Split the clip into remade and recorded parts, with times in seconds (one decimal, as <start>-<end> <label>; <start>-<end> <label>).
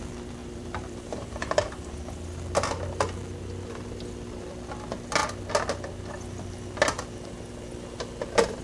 0.0-0.4 recorded; 0.4-1.9 remade; 1.9-8.6 recorded